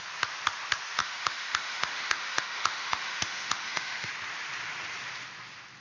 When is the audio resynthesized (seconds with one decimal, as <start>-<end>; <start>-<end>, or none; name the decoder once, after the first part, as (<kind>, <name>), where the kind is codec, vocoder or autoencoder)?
1.0-4.1 (autoencoder, DAC-VAE)